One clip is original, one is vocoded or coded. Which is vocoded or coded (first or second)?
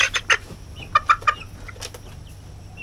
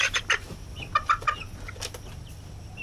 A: second